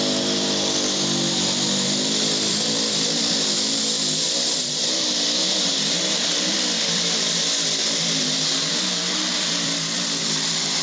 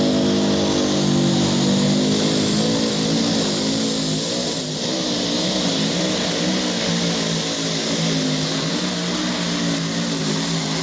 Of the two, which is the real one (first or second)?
second